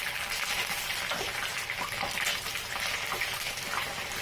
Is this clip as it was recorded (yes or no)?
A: yes